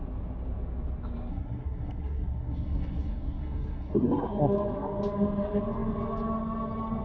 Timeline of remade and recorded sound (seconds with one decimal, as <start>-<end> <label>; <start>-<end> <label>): 0.0-1.3 recorded; 1.3-4.4 remade; 4.4-7.0 recorded